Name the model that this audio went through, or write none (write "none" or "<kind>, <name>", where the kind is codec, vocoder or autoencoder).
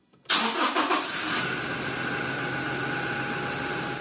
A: none